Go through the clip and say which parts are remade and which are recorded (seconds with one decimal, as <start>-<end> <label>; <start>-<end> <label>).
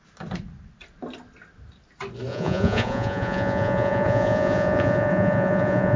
0.0-2.3 recorded; 2.3-6.0 remade